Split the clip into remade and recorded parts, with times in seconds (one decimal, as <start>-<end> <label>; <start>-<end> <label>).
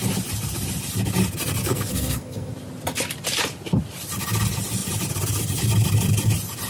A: 0.0-1.6 recorded; 1.6-2.5 remade; 2.5-6.7 recorded